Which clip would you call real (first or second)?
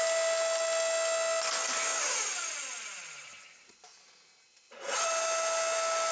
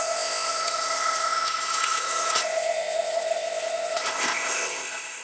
first